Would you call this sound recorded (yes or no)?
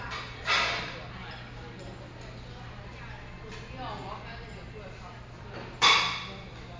yes